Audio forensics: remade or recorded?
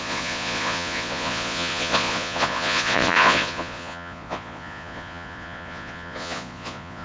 remade